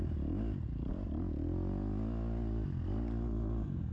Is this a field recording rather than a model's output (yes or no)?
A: yes